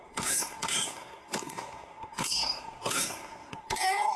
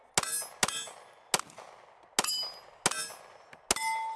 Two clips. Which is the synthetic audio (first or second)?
first